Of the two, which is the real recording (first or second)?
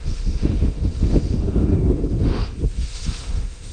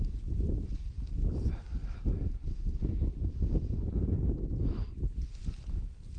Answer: second